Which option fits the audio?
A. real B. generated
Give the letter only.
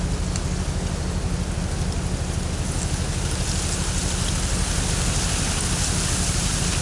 A